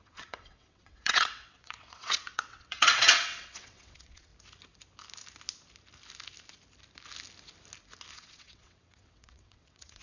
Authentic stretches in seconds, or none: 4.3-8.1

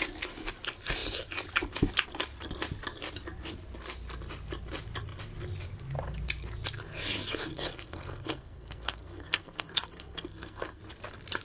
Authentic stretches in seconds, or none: 0.0-7.4; 10.8-11.4

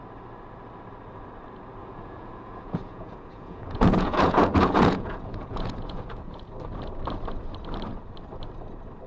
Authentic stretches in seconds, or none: 0.0-1.8; 6.5-9.1

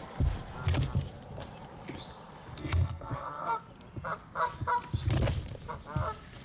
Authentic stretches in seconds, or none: 0.0-2.6; 3.6-6.4

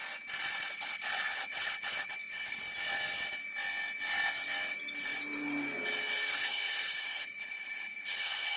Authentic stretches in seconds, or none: 0.0-0.7; 2.6-6.3

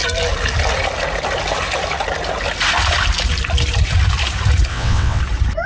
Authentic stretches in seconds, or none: 0.0-4.7; 5.2-5.7

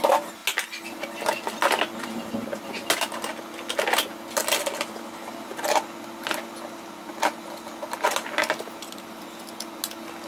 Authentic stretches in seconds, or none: 0.0-10.3